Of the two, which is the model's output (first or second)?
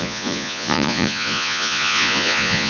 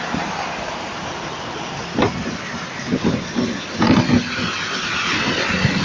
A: first